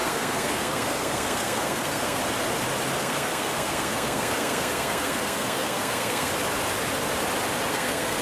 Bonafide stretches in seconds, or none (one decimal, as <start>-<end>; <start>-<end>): 2.2-3.0; 6.3-7.7